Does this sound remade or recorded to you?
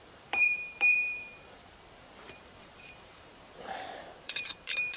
remade